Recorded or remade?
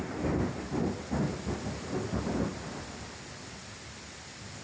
recorded